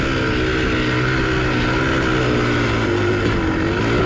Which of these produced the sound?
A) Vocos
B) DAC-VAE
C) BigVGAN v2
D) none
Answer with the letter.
D